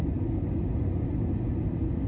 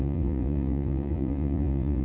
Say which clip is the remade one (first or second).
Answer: second